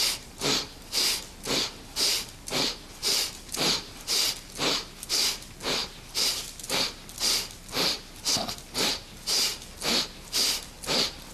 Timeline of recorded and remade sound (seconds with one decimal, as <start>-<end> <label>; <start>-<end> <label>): 0.0-3.0 recorded; 3.0-4.1 remade; 4.1-11.3 recorded